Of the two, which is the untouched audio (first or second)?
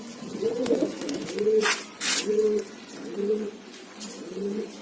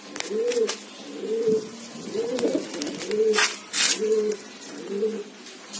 second